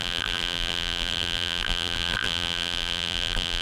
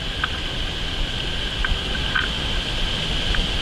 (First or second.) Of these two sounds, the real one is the second